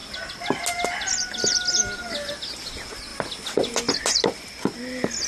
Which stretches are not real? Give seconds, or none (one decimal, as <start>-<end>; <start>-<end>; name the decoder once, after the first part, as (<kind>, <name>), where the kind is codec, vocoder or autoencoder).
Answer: none